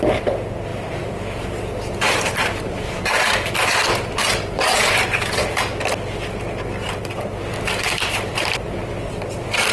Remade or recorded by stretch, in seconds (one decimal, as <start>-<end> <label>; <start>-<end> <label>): 0.0-0.7 recorded; 0.7-3.5 remade; 3.5-6.8 recorded; 6.8-8.9 remade; 8.9-9.7 recorded